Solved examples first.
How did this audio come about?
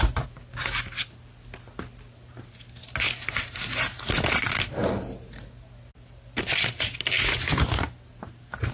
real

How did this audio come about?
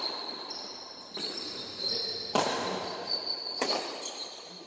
real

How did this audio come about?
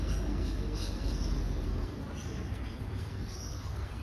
fake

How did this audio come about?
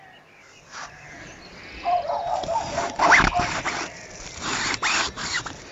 fake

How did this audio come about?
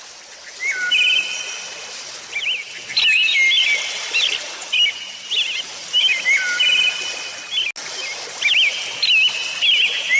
real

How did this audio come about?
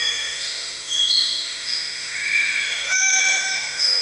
fake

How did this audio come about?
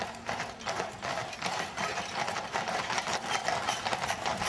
real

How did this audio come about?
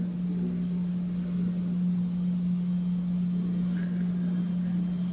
real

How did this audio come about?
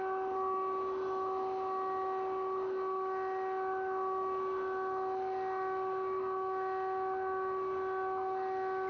real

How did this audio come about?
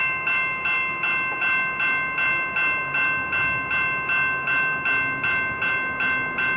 real